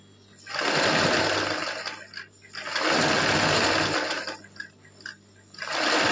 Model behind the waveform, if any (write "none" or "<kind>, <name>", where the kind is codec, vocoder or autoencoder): none